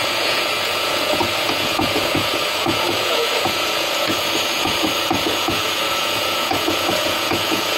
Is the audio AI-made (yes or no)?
yes